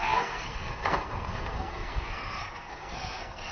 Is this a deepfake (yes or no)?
yes